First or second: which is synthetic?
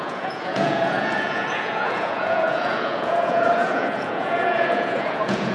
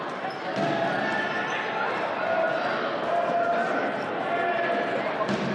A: first